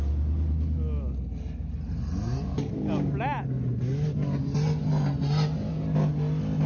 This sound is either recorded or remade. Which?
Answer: recorded